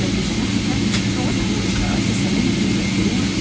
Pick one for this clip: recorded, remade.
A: recorded